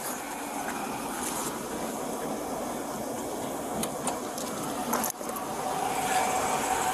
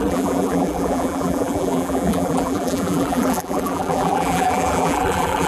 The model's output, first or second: second